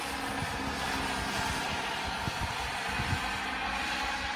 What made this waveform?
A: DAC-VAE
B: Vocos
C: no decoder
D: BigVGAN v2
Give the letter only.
C